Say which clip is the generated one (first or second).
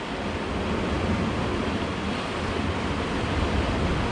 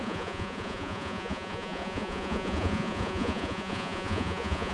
second